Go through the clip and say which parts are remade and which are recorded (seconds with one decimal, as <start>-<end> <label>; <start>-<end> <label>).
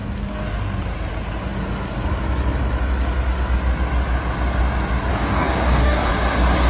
0.0-5.1 recorded; 5.1-6.1 remade; 6.1-6.7 recorded